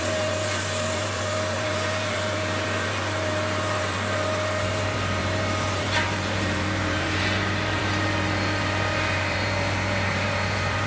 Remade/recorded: remade